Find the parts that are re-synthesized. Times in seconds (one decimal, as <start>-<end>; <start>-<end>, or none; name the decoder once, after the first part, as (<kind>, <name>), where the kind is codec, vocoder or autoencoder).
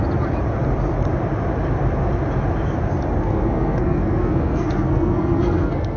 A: 3.2-6.0 (codec, SNAC)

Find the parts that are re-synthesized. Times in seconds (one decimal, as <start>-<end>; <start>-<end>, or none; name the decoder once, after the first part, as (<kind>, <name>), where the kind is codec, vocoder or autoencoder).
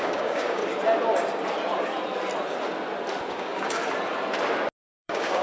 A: 0.0-0.6 (codec, DAC); 3.3-3.8; 5.0-5.4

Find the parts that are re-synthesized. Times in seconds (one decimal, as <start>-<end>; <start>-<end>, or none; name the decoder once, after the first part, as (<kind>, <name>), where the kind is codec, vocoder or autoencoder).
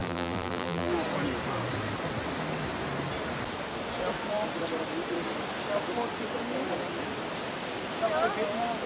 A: 0.0-0.9 (vocoder, BigVGAN v2)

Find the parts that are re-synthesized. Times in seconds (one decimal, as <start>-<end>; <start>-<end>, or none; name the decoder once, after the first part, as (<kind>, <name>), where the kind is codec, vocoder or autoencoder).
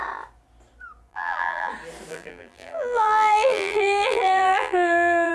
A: 1.1-1.7 (vocoder, BigVGAN v2); 2.1-5.3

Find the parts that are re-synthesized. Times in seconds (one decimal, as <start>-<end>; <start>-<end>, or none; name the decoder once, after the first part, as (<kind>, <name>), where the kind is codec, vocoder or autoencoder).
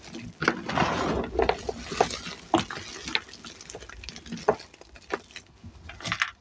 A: none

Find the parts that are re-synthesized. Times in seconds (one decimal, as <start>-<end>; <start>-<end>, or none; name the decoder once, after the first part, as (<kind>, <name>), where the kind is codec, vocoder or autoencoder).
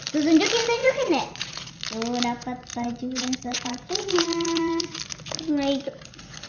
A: 0.8-1.7 (vocoder, Vocos); 2.7-5.0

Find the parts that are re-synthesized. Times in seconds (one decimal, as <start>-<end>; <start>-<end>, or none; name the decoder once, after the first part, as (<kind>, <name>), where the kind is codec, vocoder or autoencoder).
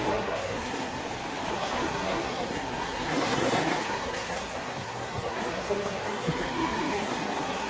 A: 0.0-1.0 (codec, SNAC); 1.5-7.7